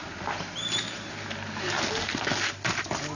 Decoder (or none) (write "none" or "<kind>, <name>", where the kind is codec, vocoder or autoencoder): none